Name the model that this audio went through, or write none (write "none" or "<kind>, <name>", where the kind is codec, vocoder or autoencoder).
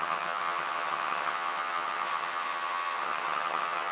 vocoder, HiFi-GAN